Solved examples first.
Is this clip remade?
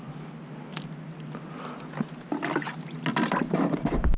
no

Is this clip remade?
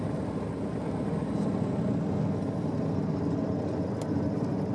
no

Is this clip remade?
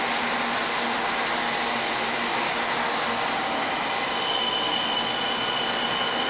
no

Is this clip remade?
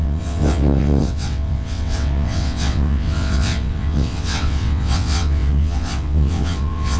yes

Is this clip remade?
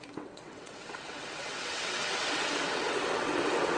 yes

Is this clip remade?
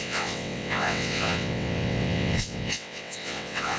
yes